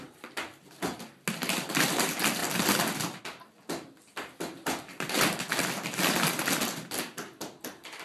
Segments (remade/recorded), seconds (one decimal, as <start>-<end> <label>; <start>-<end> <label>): 0.0-8.0 recorded